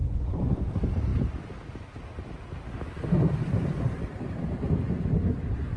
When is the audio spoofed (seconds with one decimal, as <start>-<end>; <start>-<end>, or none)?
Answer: 0.0-0.7